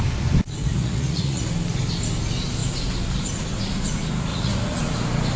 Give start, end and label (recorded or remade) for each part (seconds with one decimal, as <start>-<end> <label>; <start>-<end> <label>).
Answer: 0.0-0.6 recorded; 0.6-1.5 remade; 1.5-4.3 recorded; 4.3-4.8 remade; 4.8-5.4 recorded